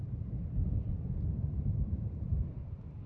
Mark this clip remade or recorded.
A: recorded